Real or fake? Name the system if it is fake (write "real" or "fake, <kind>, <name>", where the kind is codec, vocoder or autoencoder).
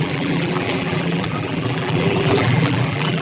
fake, vocoder, BigVGAN v2